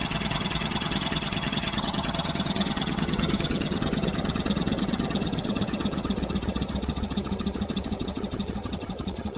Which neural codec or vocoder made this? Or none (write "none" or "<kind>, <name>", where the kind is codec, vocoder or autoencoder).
vocoder, HiFi-GAN